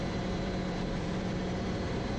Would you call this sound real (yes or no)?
no